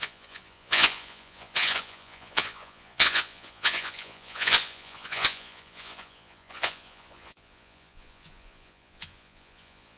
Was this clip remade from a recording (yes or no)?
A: yes